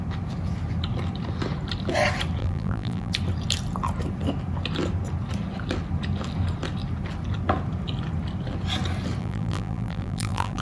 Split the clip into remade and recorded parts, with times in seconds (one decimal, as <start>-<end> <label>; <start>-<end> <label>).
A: 0.0-2.4 recorded; 2.4-3.1 remade; 3.1-9.2 recorded; 9.2-10.6 remade

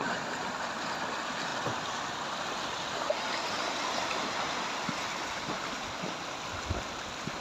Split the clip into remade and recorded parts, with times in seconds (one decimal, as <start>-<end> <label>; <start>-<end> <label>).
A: 0.0-7.4 recorded

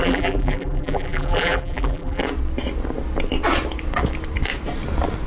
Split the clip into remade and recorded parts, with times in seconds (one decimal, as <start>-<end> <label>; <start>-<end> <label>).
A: 0.0-2.2 remade; 2.2-5.3 recorded

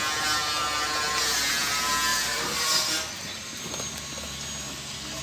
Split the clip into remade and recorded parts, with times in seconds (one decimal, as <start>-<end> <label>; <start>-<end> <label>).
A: 0.0-2.1 recorded; 2.1-3.6 remade; 3.6-5.2 recorded